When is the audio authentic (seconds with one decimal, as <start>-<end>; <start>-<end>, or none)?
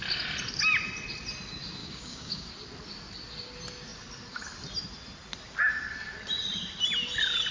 0.0-1.8; 2.5-7.5